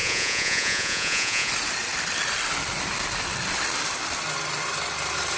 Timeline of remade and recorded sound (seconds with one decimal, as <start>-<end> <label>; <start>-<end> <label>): 0.0-1.5 remade; 1.5-5.4 recorded